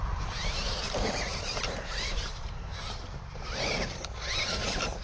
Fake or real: fake